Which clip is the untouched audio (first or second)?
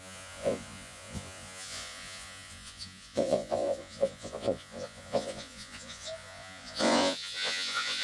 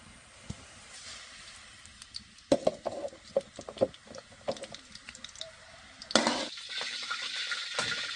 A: second